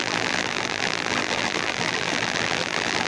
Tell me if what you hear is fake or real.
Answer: fake